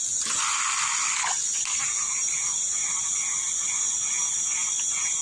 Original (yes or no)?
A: yes